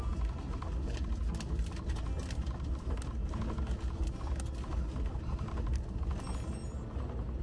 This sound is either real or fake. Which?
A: real